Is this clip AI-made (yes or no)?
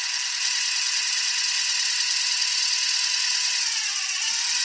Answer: no